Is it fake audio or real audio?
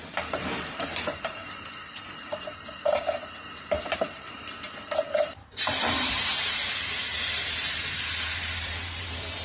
fake